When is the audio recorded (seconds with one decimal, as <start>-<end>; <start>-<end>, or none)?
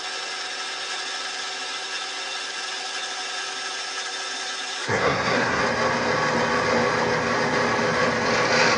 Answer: 0.0-4.8; 5.6-8.8